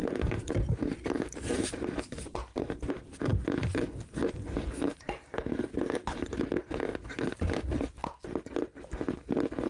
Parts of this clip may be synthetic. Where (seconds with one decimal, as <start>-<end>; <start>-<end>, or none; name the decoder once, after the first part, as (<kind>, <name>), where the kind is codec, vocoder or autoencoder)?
0.0-2.9 (vocoder, BigVGAN v2)